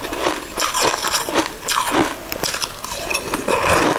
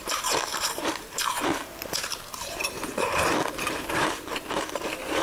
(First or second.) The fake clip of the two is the second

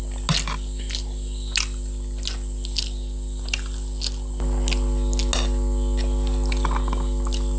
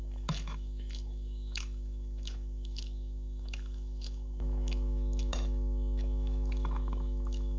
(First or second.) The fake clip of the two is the second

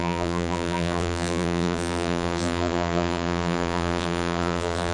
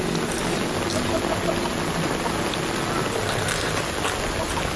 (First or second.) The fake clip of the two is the first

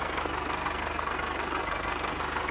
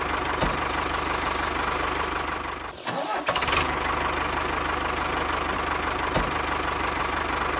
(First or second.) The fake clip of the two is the first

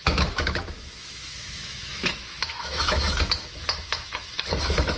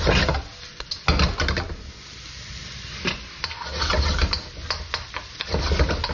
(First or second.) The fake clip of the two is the first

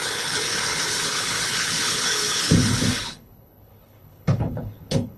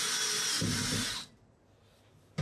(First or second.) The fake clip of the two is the first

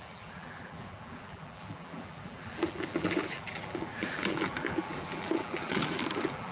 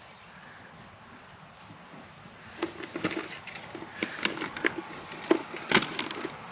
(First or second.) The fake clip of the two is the first